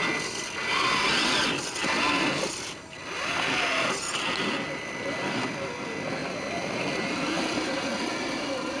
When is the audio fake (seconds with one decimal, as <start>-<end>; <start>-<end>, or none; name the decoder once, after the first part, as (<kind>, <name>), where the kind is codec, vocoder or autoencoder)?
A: none